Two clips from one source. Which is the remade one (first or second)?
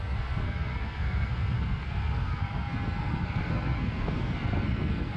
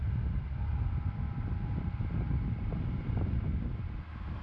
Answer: first